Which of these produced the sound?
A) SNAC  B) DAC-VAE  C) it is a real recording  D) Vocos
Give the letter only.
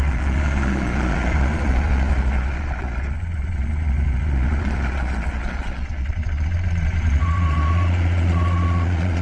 D